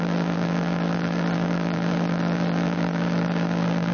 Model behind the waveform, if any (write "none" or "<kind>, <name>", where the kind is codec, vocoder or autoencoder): vocoder, BigVGAN v2